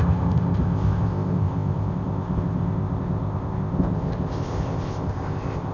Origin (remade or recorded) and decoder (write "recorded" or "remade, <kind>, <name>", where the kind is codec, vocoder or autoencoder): remade, codec, ZipCodec